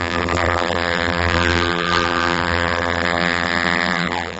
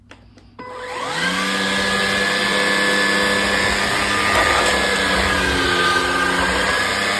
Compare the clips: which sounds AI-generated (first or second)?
first